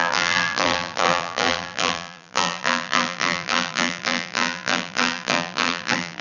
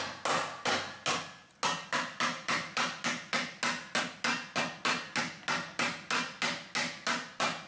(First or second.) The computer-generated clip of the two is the first